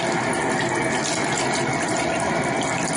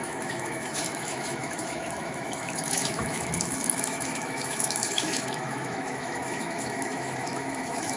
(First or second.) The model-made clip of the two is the second